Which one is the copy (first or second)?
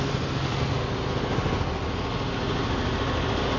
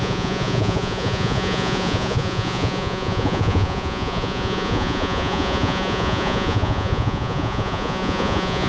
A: second